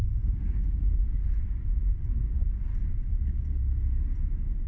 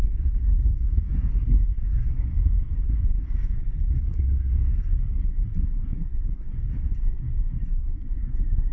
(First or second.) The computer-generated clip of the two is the second